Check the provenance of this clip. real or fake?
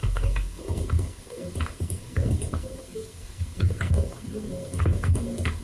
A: fake